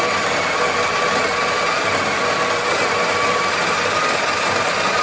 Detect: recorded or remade recorded